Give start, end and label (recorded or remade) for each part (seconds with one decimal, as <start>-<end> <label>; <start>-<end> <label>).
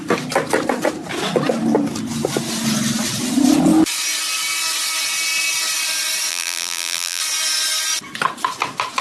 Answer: 0.0-6.3 recorded; 6.3-7.2 remade; 7.2-9.0 recorded